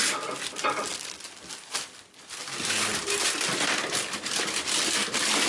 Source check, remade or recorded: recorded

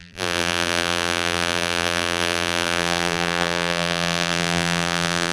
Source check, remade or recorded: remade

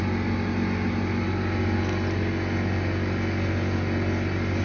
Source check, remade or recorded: recorded